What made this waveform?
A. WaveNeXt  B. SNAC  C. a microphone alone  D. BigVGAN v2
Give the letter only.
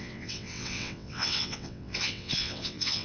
A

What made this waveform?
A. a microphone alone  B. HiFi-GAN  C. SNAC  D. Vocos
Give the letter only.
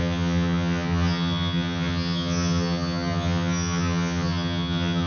B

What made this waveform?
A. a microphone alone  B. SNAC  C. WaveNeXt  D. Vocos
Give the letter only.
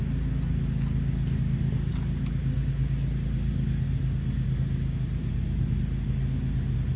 A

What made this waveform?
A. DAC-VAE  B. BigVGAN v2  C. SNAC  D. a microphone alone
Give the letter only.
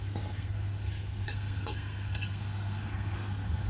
C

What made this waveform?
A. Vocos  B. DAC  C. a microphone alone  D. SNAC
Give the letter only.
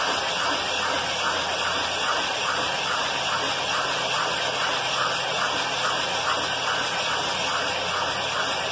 C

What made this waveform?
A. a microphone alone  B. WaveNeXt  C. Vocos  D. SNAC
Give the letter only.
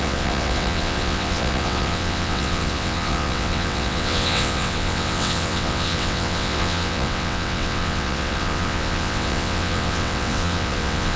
B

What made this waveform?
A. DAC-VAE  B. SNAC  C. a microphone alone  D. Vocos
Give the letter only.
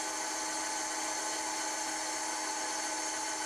C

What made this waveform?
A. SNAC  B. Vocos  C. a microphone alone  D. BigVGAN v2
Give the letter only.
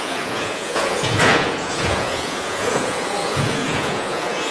B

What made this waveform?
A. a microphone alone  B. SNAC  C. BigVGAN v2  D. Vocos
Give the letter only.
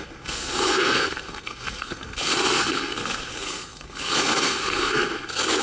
B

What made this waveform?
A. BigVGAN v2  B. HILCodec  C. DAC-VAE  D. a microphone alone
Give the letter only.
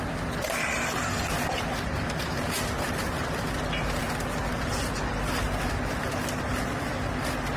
D